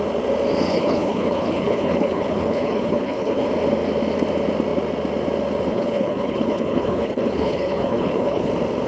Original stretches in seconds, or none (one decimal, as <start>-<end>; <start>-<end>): 0.0-0.7; 3.5-5.7; 8.5-8.9